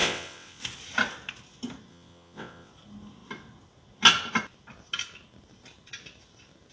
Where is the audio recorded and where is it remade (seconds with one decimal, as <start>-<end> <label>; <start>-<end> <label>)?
0.0-0.6 remade; 0.6-1.9 recorded; 1.9-2.7 remade; 2.7-6.7 recorded